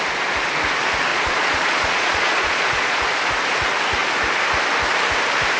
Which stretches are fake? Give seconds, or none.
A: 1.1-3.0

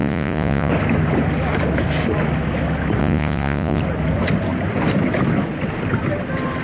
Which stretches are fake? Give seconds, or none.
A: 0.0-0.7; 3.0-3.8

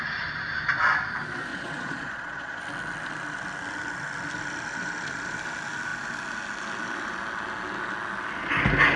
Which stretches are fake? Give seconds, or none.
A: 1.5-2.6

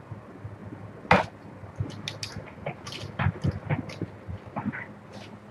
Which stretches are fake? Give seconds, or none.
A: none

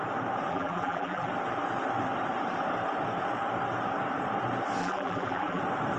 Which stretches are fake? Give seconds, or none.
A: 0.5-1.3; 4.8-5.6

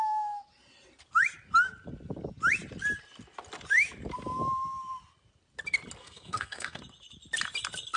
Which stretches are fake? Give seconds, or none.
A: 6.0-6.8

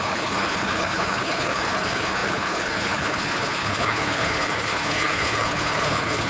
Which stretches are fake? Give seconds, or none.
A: 0.0-6.3